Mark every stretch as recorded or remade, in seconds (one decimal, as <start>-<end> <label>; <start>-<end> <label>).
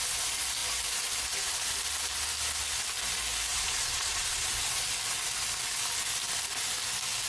0.0-3.5 recorded; 3.5-4.8 remade; 4.8-7.3 recorded